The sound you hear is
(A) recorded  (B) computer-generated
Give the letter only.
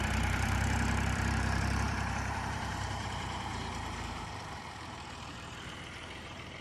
B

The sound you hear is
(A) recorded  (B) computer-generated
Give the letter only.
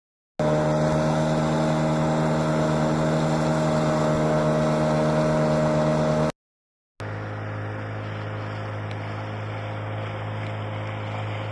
A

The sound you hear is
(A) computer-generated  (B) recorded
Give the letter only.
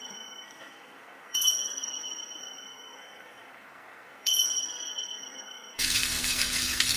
A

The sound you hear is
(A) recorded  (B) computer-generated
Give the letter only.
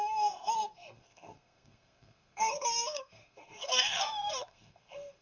B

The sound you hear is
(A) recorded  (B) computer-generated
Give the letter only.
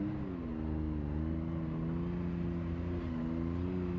A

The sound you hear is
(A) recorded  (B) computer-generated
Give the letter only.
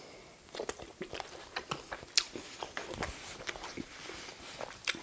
A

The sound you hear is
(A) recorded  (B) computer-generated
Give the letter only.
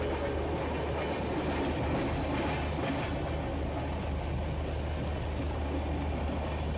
A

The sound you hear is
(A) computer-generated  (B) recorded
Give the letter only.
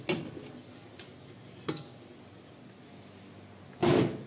B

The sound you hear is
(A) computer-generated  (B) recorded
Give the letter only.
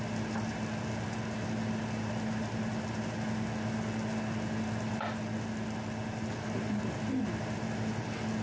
B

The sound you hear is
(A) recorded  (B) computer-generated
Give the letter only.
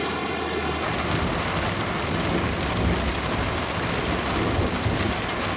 A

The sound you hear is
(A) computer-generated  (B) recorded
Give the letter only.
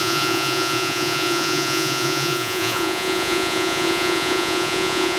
A